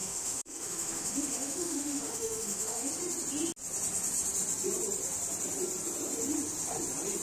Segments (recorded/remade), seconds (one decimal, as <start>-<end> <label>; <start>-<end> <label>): 0.0-2.9 remade; 2.9-7.2 recorded